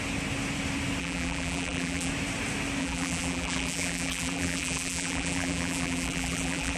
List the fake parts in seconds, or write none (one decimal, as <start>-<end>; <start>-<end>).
1.0-2.1; 2.8-6.8